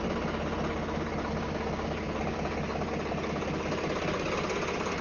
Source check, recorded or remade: recorded